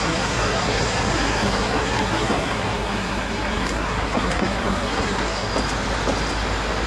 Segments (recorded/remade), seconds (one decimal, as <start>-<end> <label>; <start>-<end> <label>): 0.0-5.5 remade; 5.5-6.9 recorded

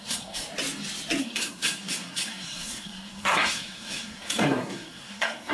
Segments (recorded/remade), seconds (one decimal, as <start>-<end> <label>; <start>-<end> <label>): 0.0-0.5 remade; 0.5-1.2 recorded; 1.2-5.5 remade

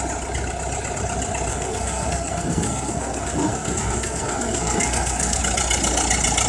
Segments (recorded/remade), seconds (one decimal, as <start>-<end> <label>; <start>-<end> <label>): 0.0-1.5 recorded; 1.5-5.4 remade; 5.4-6.5 recorded

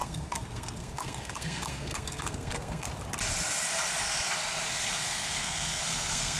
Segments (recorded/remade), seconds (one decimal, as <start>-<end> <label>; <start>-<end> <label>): 0.0-2.9 remade; 2.9-4.9 recorded; 4.9-6.4 remade

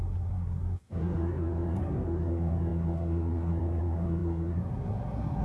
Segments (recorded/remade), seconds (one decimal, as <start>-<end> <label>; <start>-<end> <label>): 0.0-5.4 remade

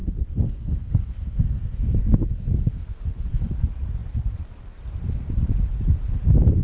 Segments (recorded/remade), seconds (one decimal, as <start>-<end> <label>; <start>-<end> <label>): 0.0-3.5 remade; 3.5-6.6 recorded

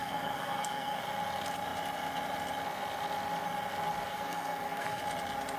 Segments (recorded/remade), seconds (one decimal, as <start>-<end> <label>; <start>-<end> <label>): 0.0-1.0 remade; 1.0-4.1 recorded; 4.1-5.0 remade; 5.0-5.6 recorded

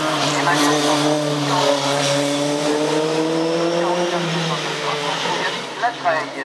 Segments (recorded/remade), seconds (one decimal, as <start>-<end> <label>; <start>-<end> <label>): 0.0-4.7 recorded; 4.7-5.3 remade; 5.3-6.4 recorded